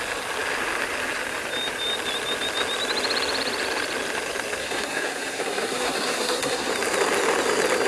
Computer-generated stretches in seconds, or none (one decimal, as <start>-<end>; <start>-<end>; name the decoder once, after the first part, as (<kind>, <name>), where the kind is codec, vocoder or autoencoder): 4.6-6.7 (codec, SNAC)

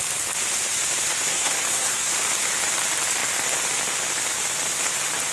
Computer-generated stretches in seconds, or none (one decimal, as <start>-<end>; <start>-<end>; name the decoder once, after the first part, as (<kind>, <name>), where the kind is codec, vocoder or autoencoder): 1.3-2.1 (codec, SNAC)

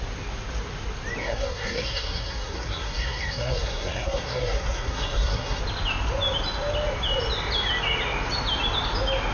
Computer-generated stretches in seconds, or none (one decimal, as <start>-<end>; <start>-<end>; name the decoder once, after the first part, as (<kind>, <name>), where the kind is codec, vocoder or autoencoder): 1.2-5.6 (codec, SNAC)